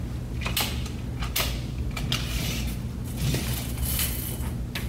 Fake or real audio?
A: real